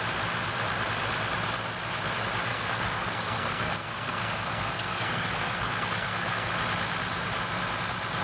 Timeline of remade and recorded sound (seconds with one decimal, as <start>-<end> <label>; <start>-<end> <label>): 0.0-2.5 recorded; 2.5-6.5 remade; 6.5-8.2 recorded